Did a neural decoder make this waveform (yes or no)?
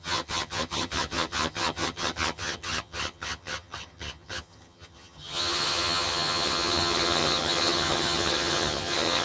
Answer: yes